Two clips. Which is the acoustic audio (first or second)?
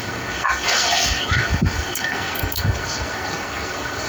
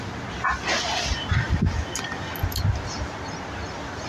second